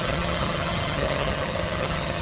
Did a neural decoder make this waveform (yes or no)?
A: yes